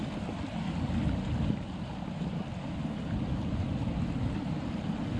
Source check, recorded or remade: recorded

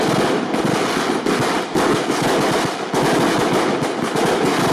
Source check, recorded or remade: recorded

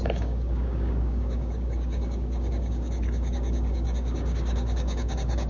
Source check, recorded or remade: remade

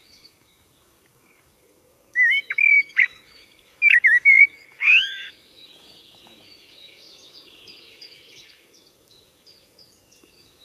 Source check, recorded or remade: remade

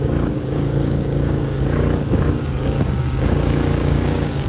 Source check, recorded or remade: remade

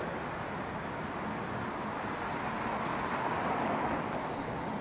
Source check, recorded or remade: recorded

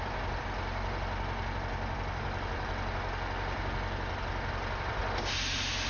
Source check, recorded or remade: recorded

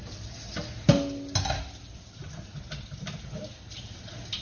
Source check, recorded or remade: recorded